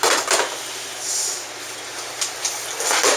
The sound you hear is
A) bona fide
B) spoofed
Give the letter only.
A